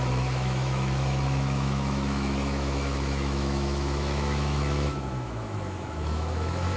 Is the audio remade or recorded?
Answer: remade